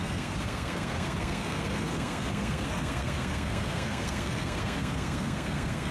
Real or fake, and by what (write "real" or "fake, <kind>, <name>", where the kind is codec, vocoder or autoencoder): fake, codec, SNAC